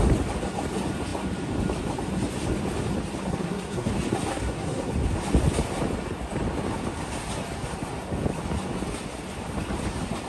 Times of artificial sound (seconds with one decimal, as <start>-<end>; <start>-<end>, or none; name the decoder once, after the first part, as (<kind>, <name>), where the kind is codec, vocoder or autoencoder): 3.3-3.9 (codec, SNAC); 4.3-4.9